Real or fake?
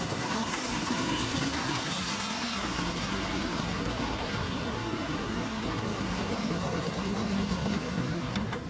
fake